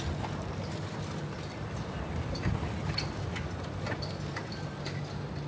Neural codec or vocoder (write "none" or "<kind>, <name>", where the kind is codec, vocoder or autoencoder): none